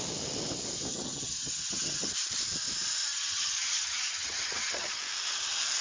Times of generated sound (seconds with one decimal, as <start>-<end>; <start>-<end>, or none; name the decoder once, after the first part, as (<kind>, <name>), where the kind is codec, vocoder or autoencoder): 0.9-2.1 (vocoder, HiFi-GAN); 3.1-5.0